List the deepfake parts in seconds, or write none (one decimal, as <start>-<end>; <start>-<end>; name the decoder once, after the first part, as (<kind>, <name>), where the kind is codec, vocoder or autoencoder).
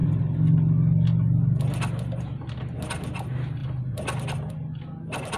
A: 3.6-4.5 (vocoder, BigVGAN v2)